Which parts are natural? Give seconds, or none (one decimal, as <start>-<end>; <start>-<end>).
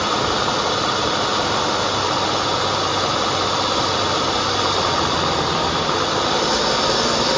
0.0-7.4